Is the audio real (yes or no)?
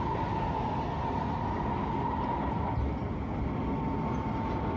yes